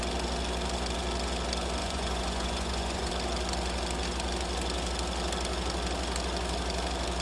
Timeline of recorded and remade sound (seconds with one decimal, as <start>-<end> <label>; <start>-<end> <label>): 0.0-1.8 recorded; 1.8-3.1 remade; 3.1-7.2 recorded